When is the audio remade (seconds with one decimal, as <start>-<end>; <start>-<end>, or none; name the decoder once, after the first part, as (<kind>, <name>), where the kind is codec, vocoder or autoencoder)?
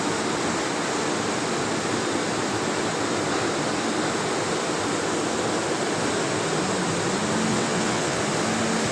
7.5-8.2 (vocoder, WaveNeXt)